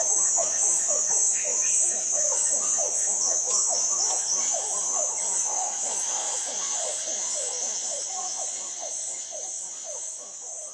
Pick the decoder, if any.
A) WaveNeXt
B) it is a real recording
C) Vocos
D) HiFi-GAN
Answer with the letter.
C